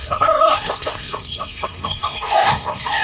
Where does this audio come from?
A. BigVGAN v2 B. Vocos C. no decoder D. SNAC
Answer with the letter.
D